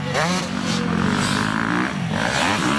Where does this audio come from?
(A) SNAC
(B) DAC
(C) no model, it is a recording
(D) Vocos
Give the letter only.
C